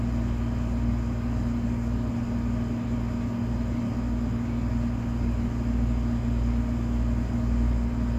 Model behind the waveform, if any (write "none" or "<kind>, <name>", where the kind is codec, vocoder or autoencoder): none